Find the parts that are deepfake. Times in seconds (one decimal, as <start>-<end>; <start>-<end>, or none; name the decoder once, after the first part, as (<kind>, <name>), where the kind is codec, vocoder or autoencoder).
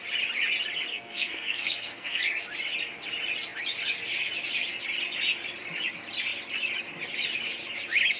0.9-2.2 (codec, SNAC)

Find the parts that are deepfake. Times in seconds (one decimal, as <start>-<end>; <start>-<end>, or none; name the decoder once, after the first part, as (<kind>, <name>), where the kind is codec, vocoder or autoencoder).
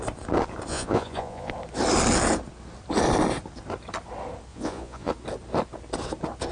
0.7-1.5 (vocoder, Vocos); 4.5-5.1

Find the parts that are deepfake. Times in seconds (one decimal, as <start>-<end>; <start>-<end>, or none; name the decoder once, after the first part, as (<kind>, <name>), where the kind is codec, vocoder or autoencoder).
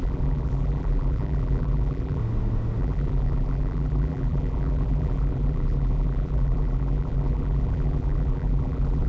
0.0-2.2 (vocoder, BigVGAN v2); 2.8-9.1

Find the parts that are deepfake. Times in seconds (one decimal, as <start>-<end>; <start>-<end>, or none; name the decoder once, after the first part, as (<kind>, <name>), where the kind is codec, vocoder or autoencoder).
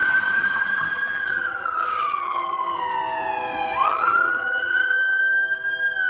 0.0-2.8 (vocoder, HiFi-GAN); 3.8-5.2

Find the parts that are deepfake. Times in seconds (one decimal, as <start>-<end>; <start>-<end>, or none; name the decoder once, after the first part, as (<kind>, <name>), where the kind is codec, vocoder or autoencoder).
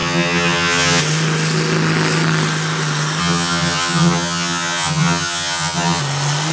0.0-1.0 (vocoder, HiFi-GAN); 3.2-6.0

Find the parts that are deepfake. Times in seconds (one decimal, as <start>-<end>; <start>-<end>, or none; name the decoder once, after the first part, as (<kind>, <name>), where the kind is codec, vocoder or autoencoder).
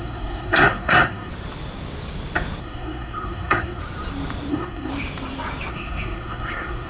0.0-1.3 (codec, SNAC); 2.6-3.8; 4.5-4.9; 5.7-6.9